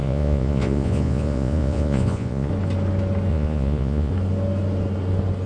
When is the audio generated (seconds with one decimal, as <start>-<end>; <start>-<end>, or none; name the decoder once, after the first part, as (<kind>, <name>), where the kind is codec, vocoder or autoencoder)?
0.0-2.5 (vocoder, Vocos); 3.3-4.1